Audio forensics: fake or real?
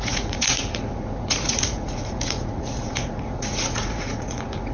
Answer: fake